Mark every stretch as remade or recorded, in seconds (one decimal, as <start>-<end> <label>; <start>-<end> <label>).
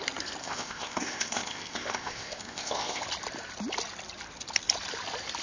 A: 0.0-0.4 recorded; 0.4-3.0 remade; 3.0-5.4 recorded